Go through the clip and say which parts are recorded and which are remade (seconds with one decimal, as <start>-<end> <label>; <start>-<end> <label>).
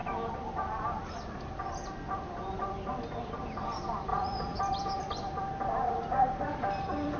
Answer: 0.0-4.1 recorded; 4.1-4.6 remade; 4.6-7.2 recorded